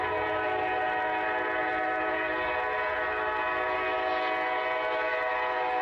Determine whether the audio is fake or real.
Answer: real